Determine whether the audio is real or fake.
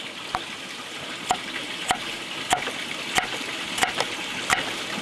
real